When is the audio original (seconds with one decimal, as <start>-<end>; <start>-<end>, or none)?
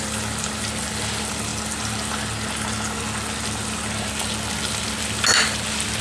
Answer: 0.0-6.0